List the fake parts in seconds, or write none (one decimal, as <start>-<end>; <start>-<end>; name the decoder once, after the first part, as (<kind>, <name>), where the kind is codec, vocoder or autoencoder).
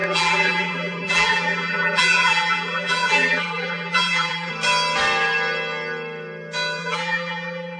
0.0-4.5 (vocoder, BigVGAN v2); 6.8-7.8